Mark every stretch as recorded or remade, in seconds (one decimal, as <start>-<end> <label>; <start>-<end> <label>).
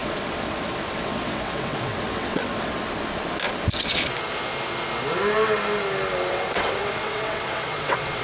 0.0-2.7 remade; 2.7-6.3 recorded; 6.3-8.2 remade